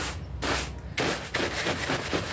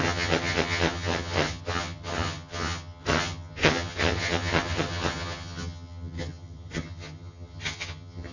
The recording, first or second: first